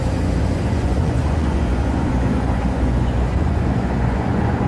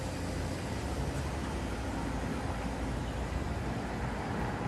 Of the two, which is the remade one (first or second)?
first